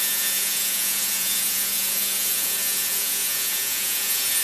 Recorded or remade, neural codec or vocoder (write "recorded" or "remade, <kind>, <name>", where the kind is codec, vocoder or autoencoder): remade, vocoder, Vocos